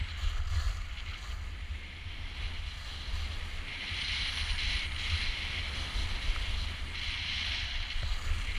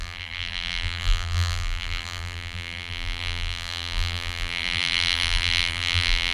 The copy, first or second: second